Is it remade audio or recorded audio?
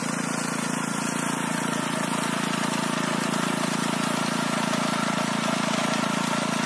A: recorded